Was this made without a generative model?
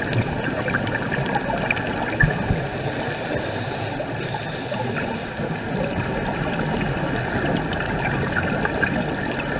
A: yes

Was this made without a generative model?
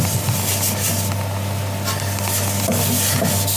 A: yes